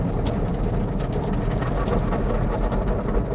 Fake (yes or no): no